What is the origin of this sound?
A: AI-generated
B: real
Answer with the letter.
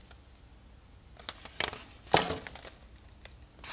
B